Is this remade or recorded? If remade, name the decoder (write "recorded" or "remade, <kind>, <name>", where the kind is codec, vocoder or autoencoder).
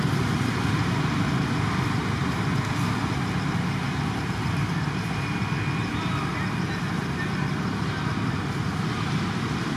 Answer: recorded